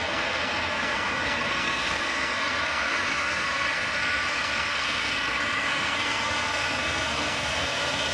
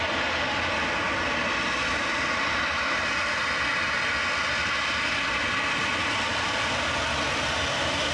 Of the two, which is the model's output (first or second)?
first